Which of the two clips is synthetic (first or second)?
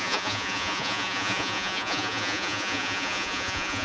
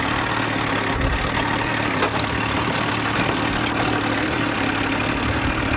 first